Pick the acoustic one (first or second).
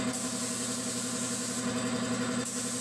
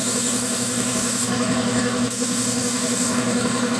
first